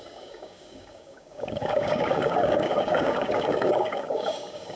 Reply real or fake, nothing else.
fake